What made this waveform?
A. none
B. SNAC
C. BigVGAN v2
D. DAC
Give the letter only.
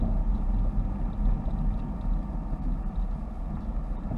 A